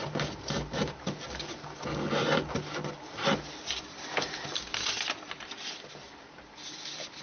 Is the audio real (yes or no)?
yes